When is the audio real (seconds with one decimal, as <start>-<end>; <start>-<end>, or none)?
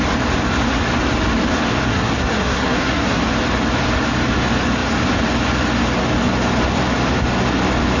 0.0-1.9; 3.2-8.0